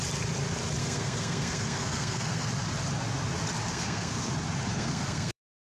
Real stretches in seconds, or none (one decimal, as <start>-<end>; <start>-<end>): 0.0-0.8; 2.5-3.7; 4.3-4.7